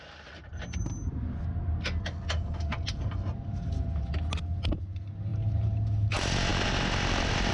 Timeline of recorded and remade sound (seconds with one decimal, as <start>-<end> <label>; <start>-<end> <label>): 0.0-7.5 recorded